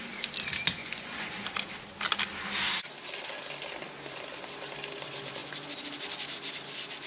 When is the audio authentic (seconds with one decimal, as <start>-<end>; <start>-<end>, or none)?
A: 0.0-0.8; 1.4-7.1